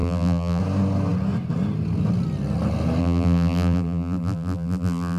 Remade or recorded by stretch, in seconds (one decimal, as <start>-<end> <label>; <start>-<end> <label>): 0.0-0.6 remade; 0.6-3.0 recorded; 3.0-5.2 remade